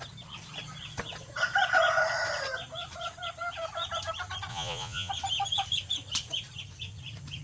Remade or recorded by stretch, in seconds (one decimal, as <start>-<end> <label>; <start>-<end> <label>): 0.0-4.5 recorded; 4.5-5.1 remade; 5.1-7.4 recorded